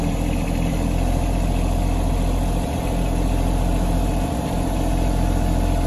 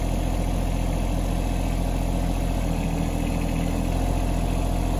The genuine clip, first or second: second